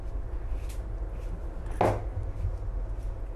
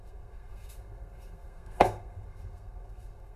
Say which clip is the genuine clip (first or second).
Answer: first